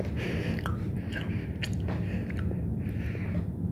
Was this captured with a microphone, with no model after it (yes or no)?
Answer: yes